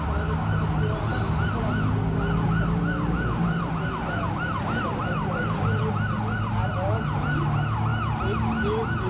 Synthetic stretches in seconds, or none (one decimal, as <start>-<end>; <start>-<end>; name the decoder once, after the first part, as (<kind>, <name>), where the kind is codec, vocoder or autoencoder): 5.0-5.8 (vocoder, BigVGAN v2)